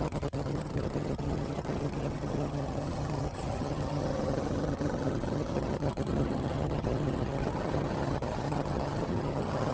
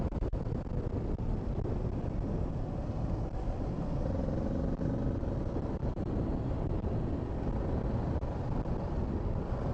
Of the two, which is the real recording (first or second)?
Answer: second